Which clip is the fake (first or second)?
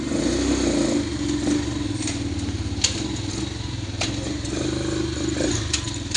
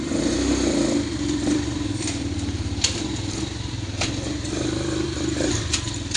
second